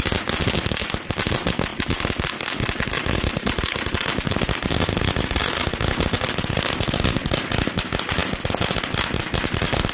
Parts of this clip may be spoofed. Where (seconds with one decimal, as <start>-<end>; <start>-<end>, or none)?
none